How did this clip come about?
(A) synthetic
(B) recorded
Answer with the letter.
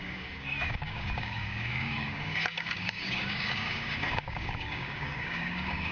A